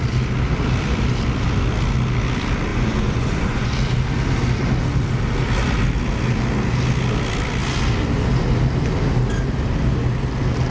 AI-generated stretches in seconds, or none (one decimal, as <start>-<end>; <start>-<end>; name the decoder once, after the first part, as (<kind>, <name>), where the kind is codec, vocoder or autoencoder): 2.7-3.7 (vocoder, Vocos)